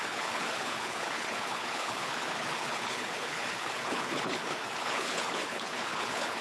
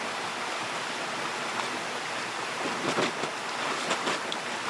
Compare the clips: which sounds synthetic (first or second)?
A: first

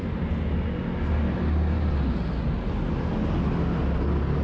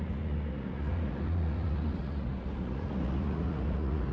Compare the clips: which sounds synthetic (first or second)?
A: second